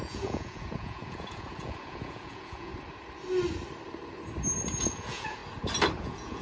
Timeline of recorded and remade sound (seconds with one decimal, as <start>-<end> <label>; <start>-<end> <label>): 0.0-2.7 remade; 2.7-4.8 recorded; 4.8-5.4 remade; 5.4-6.0 recorded; 6.0-6.4 remade